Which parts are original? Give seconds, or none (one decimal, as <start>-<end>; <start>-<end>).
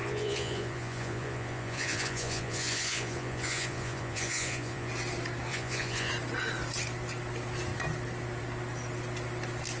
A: 4.9-5.5; 6.1-9.8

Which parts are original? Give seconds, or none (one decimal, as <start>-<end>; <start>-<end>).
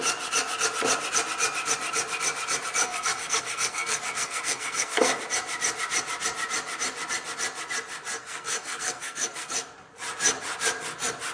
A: 0.0-2.8; 5.2-8.2; 9.7-11.3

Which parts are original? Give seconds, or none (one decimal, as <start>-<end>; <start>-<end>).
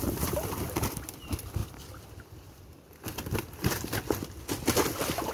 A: none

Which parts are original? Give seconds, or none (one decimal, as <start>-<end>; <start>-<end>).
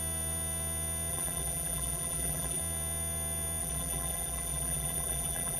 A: 0.0-1.1; 2.6-3.6